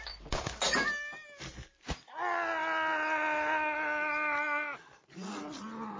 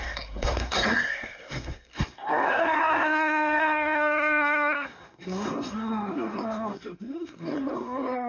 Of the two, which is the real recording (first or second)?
first